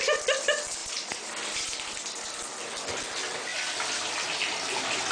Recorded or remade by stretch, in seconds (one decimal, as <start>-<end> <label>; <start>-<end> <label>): 0.0-0.8 recorded; 0.8-2.4 remade; 2.4-5.1 recorded